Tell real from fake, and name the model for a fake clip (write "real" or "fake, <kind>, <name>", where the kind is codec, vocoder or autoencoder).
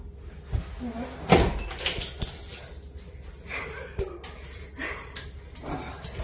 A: real